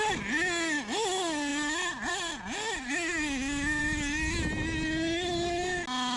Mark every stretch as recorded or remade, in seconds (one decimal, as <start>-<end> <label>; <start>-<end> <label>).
0.0-6.2 recorded